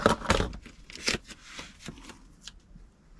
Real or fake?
real